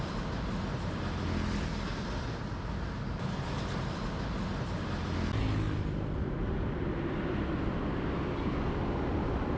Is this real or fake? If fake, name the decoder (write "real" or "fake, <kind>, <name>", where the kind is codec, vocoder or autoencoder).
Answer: real